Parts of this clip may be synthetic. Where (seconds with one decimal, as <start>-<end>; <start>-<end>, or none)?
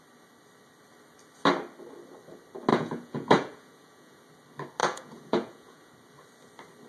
2.7-4.2; 4.8-5.9